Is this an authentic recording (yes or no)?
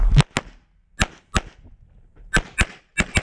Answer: yes